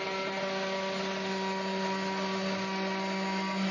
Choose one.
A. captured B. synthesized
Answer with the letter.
A